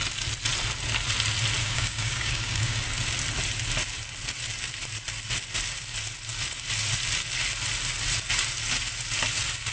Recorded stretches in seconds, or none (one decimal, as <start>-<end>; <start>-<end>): 0.0-1.6; 2.8-9.7